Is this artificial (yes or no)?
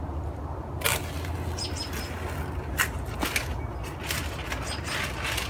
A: no